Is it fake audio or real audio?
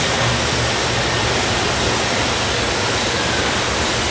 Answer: real